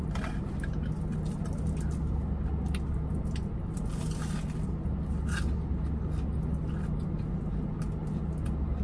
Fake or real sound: real